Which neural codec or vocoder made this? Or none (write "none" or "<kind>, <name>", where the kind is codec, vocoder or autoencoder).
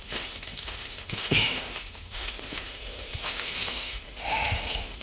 autoencoder, DAC-VAE